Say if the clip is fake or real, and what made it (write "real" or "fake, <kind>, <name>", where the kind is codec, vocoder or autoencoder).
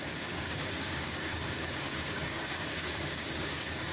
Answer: fake, codec, DAC